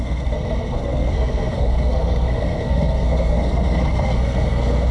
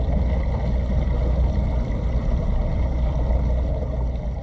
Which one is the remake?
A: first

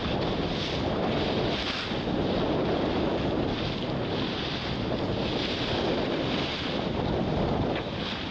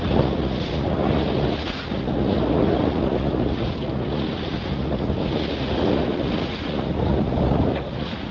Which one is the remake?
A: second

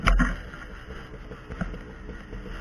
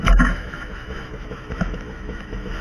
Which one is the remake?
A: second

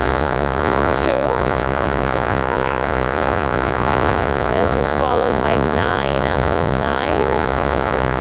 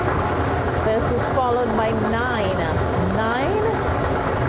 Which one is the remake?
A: first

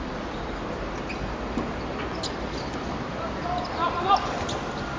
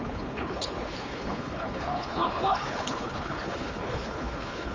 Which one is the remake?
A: second